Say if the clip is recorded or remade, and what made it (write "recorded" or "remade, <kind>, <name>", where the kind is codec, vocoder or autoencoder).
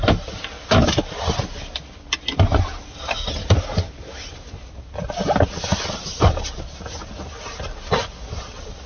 recorded